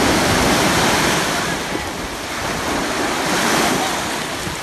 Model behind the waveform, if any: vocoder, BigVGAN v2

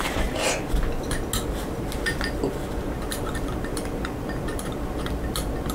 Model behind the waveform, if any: none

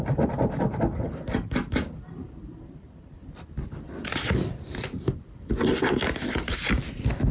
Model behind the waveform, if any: vocoder, BigVGAN v2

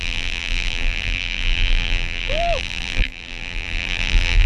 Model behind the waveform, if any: vocoder, BigVGAN v2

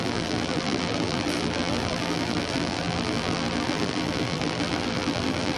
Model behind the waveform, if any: vocoder, BigVGAN v2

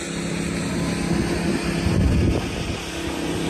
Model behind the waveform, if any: none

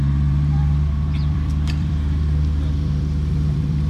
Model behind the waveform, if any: vocoder, BigVGAN v2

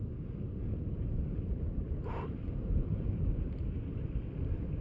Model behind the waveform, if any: vocoder, BigVGAN v2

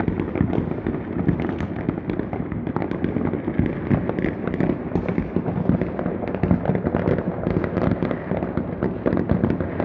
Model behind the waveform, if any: none